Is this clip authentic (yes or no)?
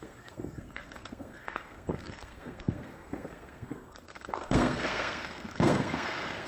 no